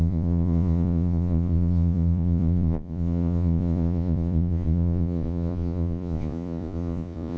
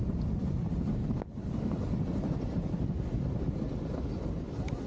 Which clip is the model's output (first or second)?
first